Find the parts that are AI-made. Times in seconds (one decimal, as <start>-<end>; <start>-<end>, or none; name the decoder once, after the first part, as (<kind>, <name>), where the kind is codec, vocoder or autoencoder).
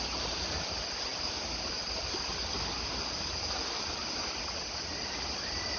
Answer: none